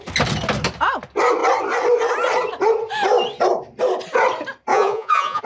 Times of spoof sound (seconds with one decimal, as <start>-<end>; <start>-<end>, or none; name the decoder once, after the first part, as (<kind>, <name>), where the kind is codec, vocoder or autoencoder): 4.7-5.4 (vocoder, Vocos)